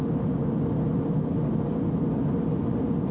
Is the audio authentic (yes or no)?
yes